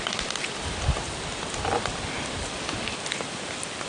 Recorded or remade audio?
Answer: recorded